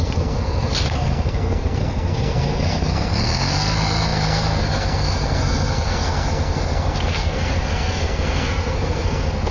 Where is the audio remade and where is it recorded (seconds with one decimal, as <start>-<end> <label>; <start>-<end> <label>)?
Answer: 0.0-9.5 remade